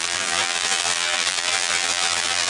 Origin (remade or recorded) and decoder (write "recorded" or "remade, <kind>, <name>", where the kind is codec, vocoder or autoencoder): remade, vocoder, BigVGAN v2